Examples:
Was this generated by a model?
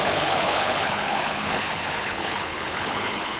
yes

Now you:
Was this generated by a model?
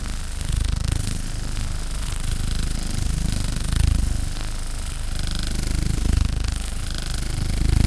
no